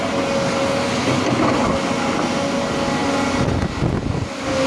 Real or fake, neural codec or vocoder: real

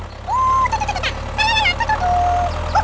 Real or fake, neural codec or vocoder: real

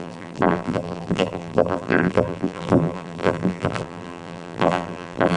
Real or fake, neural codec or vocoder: fake, vocoder, BigVGAN v2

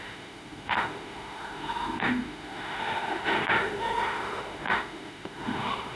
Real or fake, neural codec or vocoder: fake, autoencoder, DAC-VAE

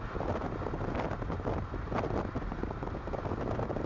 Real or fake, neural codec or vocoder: real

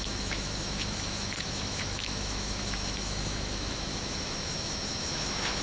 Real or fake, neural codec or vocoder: fake, autoencoder, DAC-VAE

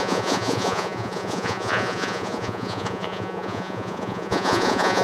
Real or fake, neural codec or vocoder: fake, vocoder, Vocos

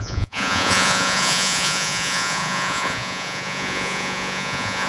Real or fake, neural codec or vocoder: fake, vocoder, Vocos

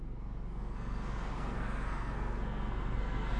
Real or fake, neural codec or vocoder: fake, codec, SNAC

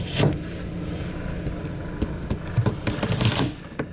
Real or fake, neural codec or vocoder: real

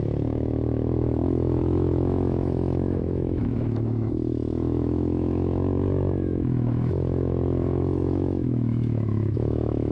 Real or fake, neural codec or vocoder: fake, autoencoder, DAC-VAE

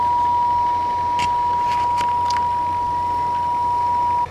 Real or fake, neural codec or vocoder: real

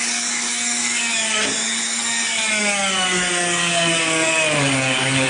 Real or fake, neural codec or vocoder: fake, codec, DAC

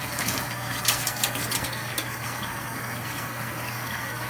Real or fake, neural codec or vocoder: fake, codec, SNAC